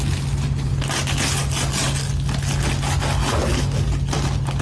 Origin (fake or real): real